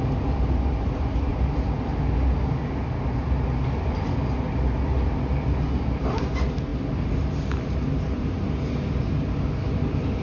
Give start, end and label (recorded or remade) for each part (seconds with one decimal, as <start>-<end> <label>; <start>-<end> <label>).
0.0-10.2 recorded